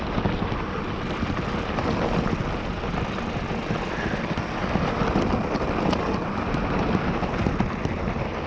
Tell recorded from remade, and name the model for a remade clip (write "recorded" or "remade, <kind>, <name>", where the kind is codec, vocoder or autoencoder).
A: recorded